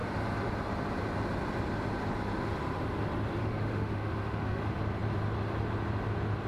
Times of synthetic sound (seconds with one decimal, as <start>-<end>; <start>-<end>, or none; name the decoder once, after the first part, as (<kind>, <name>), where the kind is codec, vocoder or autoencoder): 3.4-4.6 (autoencoder, DAC-VAE)